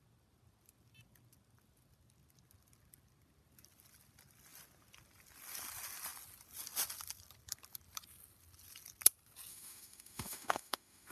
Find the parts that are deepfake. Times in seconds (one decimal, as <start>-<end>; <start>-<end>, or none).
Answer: 9.5-11.1